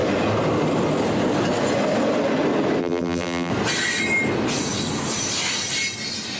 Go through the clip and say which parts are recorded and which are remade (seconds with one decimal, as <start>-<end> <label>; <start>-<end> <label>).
0.0-2.8 recorded; 2.8-3.5 remade; 3.5-6.4 recorded